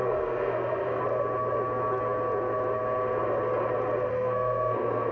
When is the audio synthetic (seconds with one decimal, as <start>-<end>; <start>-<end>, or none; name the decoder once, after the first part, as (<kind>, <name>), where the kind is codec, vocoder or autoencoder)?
0.0-1.0 (codec, SNAC); 4.1-5.1